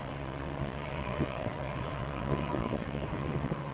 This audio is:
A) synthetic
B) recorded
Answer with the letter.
A